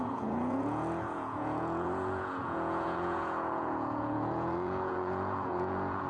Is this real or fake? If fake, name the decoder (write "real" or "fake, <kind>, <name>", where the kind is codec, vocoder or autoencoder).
fake, vocoder, Vocos